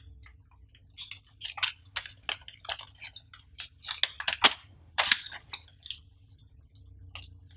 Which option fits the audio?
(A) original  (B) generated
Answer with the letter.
A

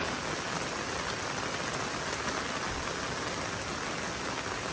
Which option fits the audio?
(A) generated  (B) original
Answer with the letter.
B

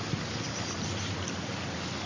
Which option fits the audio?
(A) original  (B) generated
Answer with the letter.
A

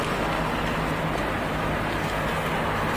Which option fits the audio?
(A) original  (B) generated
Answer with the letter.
A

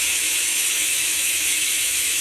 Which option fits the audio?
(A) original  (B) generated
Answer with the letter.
B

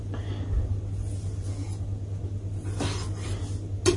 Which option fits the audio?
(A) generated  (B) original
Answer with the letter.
B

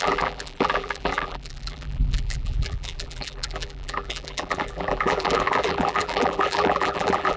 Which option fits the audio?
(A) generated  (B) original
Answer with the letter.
A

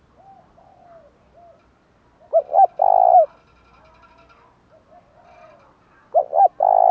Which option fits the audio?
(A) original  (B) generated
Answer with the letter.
A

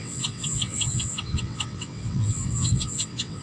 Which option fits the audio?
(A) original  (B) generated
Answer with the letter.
B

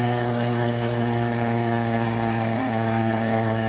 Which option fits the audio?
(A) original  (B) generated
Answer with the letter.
B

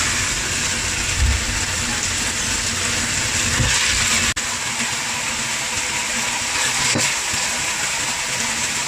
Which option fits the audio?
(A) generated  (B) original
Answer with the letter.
B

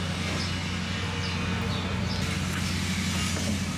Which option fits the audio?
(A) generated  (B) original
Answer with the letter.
B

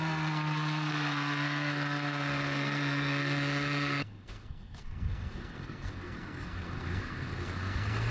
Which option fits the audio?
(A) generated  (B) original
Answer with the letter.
A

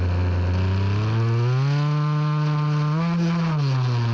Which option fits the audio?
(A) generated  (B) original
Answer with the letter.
B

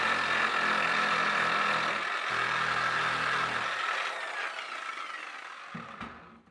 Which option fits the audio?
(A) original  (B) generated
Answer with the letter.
A